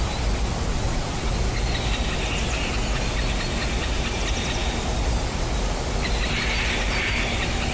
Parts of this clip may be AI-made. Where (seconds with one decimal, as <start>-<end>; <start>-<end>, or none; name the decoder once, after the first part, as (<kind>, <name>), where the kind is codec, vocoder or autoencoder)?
0.7-1.3 (vocoder, Vocos)